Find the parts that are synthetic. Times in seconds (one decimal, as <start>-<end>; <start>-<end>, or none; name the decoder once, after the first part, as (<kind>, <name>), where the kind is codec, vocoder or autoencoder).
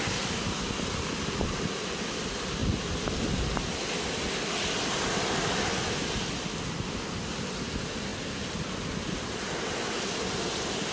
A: none